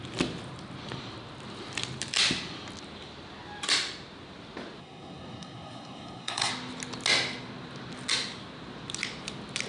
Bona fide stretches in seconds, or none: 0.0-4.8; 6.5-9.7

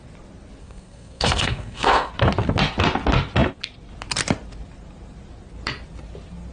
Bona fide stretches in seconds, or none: 0.0-0.6; 2.1-6.5